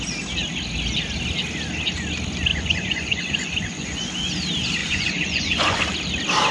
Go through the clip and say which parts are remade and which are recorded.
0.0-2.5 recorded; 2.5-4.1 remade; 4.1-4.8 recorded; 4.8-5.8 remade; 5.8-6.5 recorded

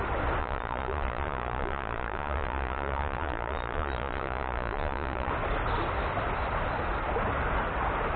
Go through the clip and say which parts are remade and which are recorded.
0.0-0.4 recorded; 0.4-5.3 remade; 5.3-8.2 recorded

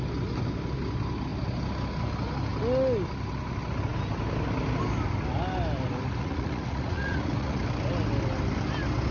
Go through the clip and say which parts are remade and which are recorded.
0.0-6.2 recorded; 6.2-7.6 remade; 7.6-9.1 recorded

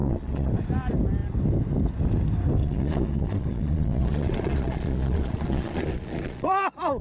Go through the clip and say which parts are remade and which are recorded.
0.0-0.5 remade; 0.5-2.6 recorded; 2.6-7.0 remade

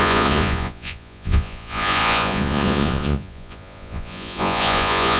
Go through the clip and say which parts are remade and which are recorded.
0.0-5.2 remade

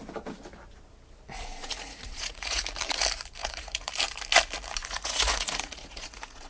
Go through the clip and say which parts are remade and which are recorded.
0.0-1.6 recorded; 1.6-2.6 remade; 2.6-3.4 recorded; 3.4-3.9 remade; 3.9-4.8 recorded; 4.8-6.5 remade

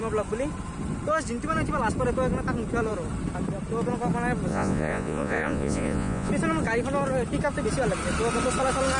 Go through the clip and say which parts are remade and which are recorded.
0.0-4.5 recorded; 4.5-6.3 remade; 6.3-9.0 recorded

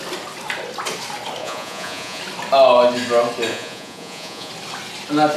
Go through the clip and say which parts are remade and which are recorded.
0.0-1.4 recorded; 1.4-2.2 remade; 2.2-3.5 recorded; 3.5-4.5 remade; 4.5-5.4 recorded